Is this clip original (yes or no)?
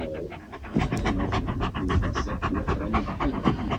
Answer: yes